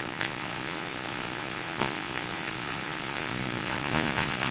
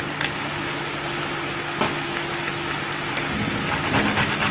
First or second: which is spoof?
first